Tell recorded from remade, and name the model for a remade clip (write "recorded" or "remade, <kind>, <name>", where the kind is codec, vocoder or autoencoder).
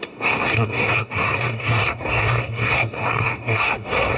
remade, codec, SNAC